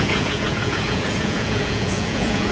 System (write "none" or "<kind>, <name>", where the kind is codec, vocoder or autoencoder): vocoder, Vocos